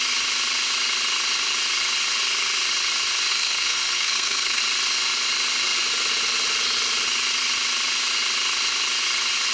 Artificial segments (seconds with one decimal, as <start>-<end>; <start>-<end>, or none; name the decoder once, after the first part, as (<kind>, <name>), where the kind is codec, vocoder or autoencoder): 3.3-4.6 (codec, SNAC)